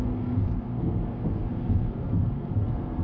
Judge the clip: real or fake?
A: fake